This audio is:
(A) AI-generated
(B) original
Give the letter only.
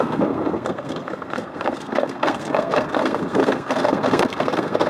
A